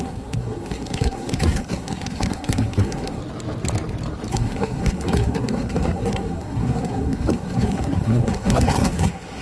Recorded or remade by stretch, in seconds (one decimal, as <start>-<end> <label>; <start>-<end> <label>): 0.0-3.2 remade; 3.2-4.3 recorded; 4.3-9.4 remade